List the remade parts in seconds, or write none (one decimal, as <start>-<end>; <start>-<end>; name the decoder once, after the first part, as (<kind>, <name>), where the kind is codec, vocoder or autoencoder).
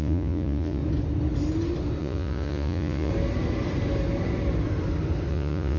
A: 0.0-0.8 (vocoder, Vocos); 2.0-3.1; 5.3-5.8